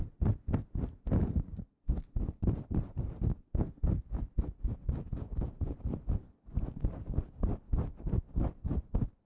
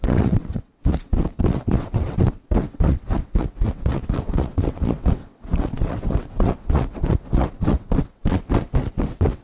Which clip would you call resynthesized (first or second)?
second